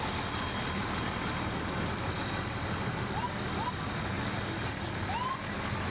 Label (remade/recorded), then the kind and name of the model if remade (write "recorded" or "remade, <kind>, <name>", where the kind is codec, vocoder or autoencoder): recorded